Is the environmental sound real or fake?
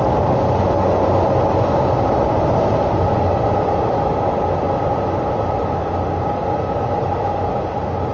real